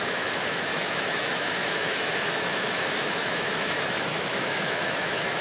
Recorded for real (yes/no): no